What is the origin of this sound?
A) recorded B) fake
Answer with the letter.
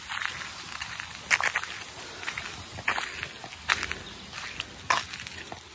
A